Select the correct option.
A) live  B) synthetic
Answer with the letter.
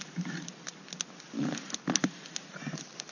A